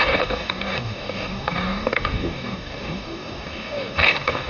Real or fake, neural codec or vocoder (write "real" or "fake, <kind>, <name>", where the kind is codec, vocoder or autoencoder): fake, codec, DAC